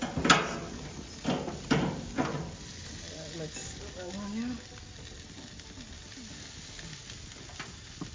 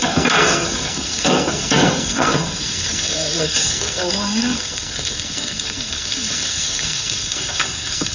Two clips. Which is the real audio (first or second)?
first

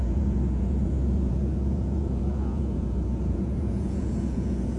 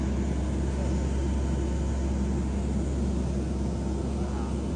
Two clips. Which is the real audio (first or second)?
second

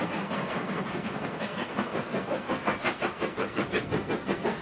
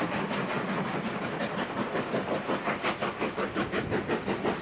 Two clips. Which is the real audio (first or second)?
second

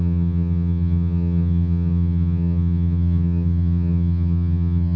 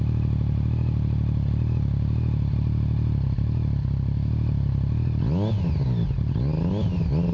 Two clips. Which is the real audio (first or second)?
second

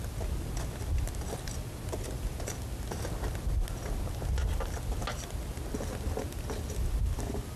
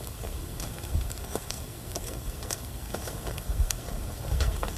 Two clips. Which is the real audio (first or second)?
first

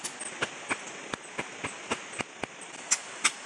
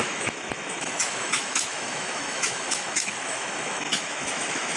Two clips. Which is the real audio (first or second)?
first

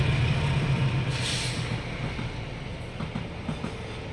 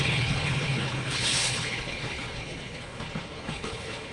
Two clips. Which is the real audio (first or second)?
first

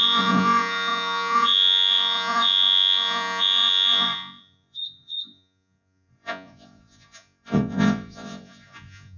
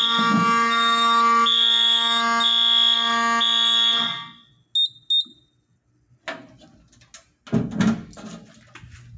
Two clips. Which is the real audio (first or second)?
second